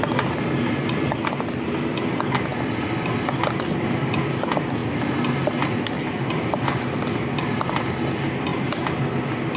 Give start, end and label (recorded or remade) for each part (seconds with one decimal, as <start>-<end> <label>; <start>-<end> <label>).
0.0-9.6 recorded